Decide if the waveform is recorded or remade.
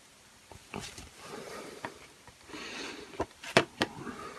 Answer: remade